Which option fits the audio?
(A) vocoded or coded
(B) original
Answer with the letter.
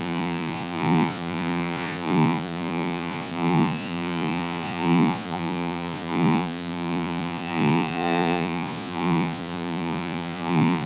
A